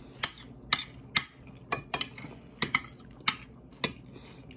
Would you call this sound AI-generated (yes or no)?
no